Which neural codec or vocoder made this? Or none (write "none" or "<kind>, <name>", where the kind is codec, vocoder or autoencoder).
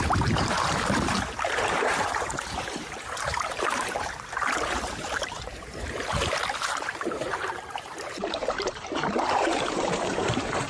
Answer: vocoder, BigVGAN v2